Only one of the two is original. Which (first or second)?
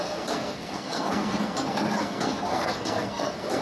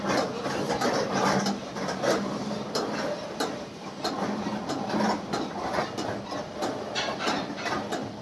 second